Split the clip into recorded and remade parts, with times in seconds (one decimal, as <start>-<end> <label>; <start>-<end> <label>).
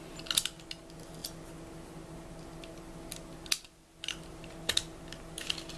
0.0-5.8 recorded